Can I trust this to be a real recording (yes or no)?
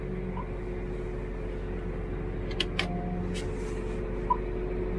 yes